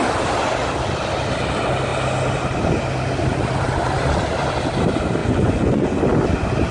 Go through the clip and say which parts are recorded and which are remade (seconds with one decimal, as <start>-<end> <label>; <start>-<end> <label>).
0.0-5.2 recorded; 5.2-6.0 remade; 6.0-6.7 recorded